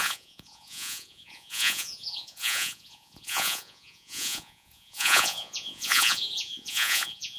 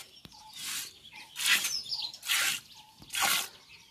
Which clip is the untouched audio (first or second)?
second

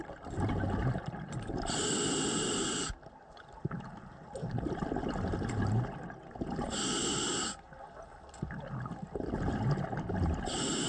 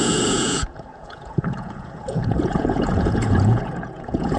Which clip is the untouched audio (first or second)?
first